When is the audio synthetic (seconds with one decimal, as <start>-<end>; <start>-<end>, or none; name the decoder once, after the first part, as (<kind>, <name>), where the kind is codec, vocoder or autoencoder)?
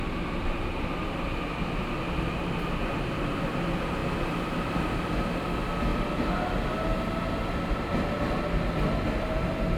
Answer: 2.8-3.4 (vocoder, BigVGAN v2)